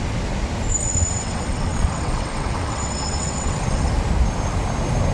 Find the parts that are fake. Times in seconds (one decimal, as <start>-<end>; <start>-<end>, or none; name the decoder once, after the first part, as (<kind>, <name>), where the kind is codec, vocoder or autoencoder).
0.8-3.9 (vocoder, WaveNeXt)